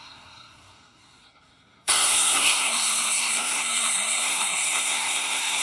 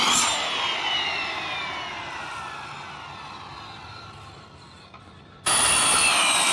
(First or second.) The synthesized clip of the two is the first